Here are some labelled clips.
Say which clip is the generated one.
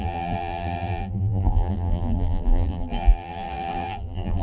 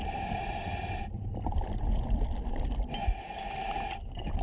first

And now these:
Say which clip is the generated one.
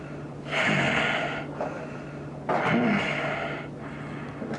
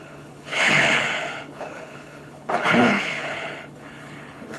second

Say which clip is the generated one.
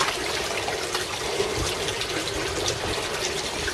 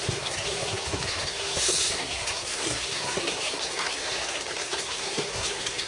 second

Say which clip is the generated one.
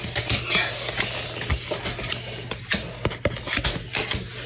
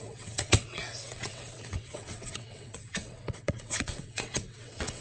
second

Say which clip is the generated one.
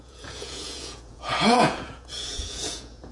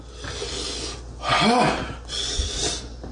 first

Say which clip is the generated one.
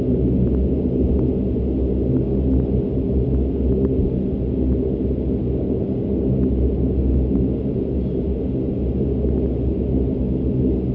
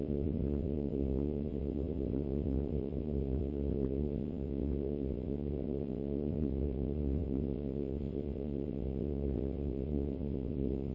second